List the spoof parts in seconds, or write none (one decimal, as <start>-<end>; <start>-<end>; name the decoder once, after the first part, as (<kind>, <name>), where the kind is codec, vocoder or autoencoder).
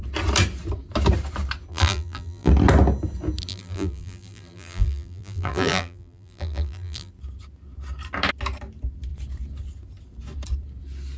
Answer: 1.7-2.5 (vocoder, BigVGAN v2); 3.5-7.1